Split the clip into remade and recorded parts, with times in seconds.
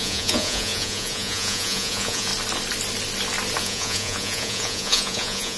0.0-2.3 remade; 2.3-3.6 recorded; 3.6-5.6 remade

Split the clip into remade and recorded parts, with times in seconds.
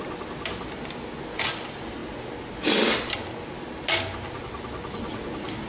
0.0-5.7 recorded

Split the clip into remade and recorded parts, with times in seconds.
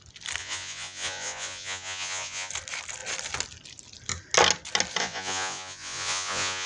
0.0-0.4 recorded; 0.4-2.5 remade; 2.5-5.0 recorded; 5.0-6.7 remade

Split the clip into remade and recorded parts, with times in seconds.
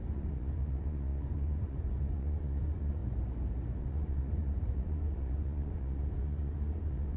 0.0-3.0 remade; 3.0-3.8 recorded; 3.8-7.2 remade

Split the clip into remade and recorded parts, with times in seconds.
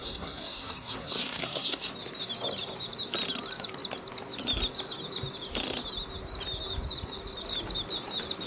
0.0-1.9 remade; 1.9-8.5 recorded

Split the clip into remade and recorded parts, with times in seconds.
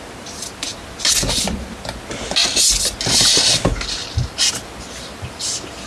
0.0-5.9 recorded